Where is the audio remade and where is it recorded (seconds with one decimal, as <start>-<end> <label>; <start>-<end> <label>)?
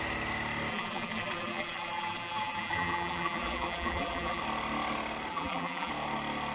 0.0-0.7 recorded; 0.7-4.4 remade; 4.4-5.3 recorded; 5.3-5.9 remade; 5.9-6.5 recorded